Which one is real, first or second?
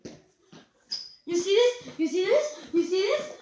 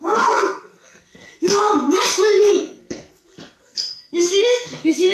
first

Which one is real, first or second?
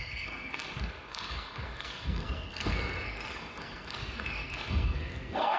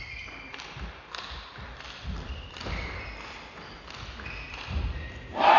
second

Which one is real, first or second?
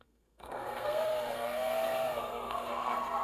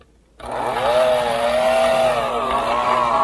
second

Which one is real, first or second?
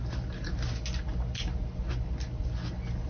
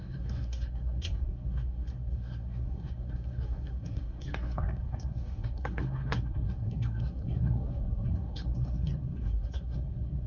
first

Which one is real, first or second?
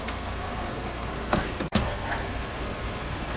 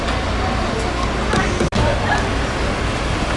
second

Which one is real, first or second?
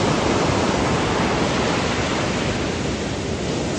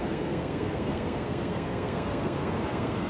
first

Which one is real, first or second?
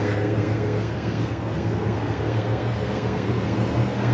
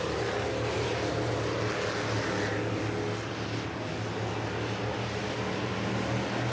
second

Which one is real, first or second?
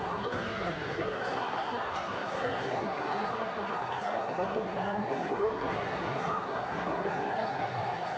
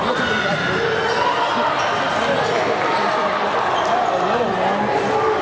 second